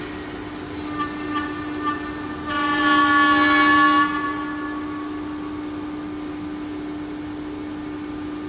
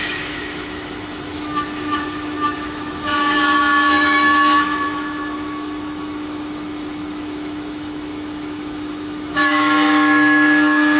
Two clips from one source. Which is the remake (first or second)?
second